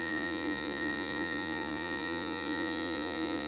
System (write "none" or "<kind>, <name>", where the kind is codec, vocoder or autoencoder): vocoder, Vocos